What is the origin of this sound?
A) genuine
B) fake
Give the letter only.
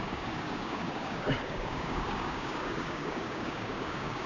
B